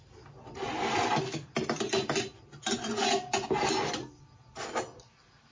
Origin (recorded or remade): recorded